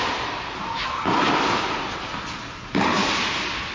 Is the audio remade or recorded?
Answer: recorded